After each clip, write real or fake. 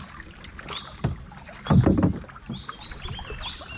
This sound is real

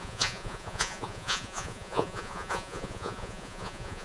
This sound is fake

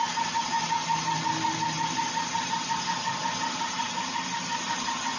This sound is real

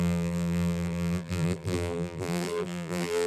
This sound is fake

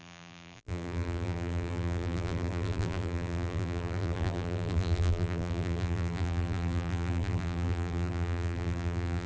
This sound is fake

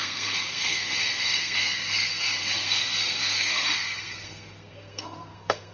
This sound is fake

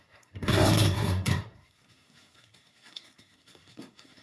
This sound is fake